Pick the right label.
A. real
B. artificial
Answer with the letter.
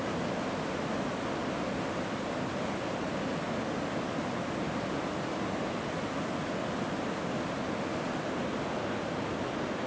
A